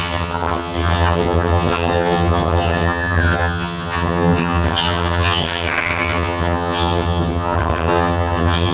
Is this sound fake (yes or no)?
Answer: yes